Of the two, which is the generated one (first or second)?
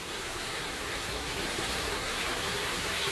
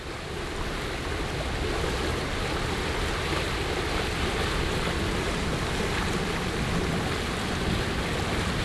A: first